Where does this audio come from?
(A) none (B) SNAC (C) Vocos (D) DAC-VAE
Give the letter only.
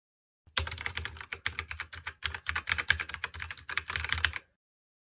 A